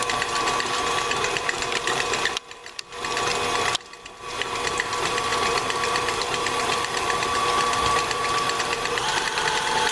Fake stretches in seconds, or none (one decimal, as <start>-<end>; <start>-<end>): 0.0-2.6; 4.1-9.9